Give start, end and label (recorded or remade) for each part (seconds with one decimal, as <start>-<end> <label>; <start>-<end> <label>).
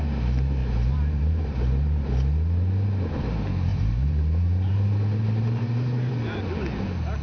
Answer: 0.0-0.6 recorded; 0.6-2.1 remade; 2.1-3.7 recorded; 3.7-6.1 remade; 6.1-7.2 recorded